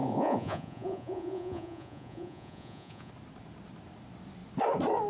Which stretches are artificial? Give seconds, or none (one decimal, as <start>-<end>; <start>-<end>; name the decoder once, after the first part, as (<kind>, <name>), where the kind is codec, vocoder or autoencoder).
0.0-3.1 (vocoder, Vocos)